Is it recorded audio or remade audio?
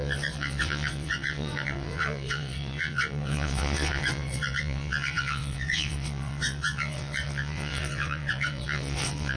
remade